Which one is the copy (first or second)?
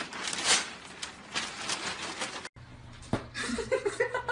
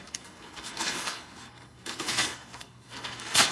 second